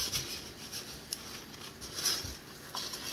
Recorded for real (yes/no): yes